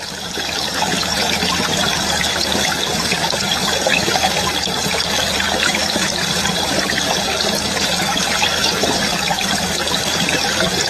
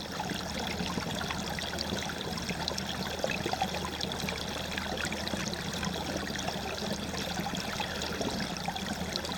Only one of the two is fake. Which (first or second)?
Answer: first